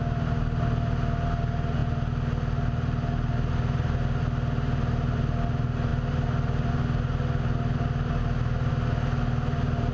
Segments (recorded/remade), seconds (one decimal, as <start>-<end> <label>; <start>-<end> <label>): 0.0-9.9 recorded